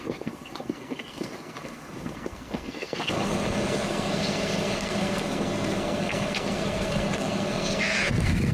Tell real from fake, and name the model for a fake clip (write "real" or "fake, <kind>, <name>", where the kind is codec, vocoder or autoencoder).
fake, codec, SNAC